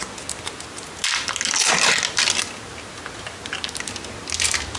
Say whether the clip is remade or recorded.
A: recorded